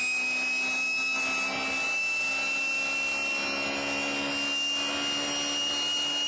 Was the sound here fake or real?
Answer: real